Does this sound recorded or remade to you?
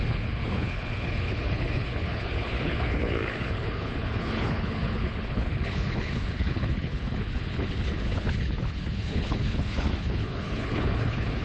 remade